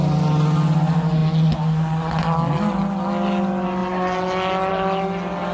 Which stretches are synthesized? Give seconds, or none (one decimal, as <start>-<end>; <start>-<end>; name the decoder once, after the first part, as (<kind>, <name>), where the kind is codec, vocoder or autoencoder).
none